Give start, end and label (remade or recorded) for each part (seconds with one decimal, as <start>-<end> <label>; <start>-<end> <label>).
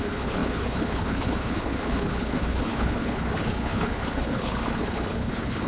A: 0.0-5.7 remade